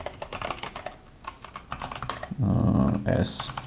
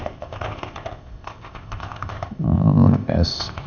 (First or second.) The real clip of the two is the first